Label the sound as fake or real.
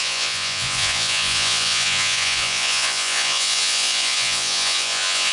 fake